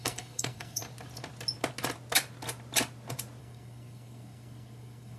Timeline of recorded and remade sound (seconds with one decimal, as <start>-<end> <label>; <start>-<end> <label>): 0.0-0.8 remade; 0.8-3.4 recorded; 3.4-5.2 remade